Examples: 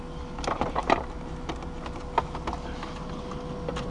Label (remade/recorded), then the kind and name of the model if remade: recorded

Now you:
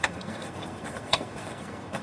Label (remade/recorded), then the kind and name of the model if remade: remade, codec, SNAC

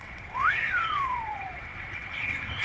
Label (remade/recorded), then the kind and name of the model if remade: remade, vocoder, WaveNeXt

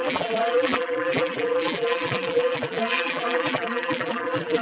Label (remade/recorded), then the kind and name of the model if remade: remade, vocoder, BigVGAN v2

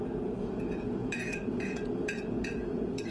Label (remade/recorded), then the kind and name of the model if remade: remade, vocoder, Vocos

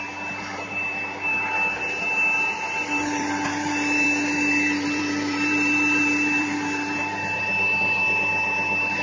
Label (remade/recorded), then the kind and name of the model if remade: remade, vocoder, BigVGAN v2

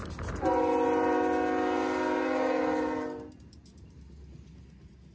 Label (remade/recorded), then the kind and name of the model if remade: recorded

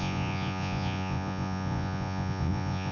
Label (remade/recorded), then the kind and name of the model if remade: remade, vocoder, Vocos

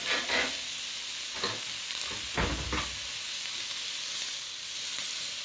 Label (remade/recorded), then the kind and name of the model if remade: recorded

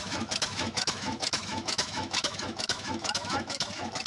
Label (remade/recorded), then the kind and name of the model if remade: remade, autoencoder, DAC-VAE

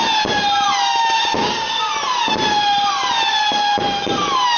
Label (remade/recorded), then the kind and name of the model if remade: recorded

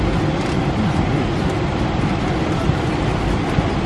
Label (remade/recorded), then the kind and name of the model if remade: recorded